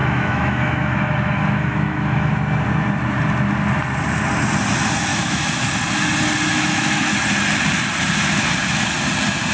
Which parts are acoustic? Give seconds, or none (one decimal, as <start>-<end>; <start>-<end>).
2.3-5.1; 5.7-6.5; 7.2-9.5